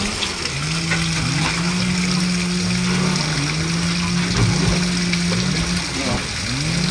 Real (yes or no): yes